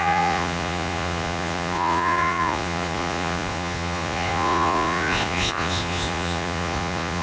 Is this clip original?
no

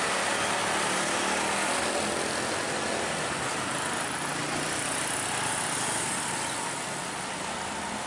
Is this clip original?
yes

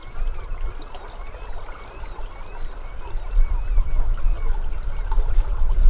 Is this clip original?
yes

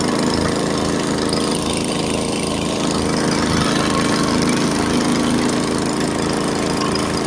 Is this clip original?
yes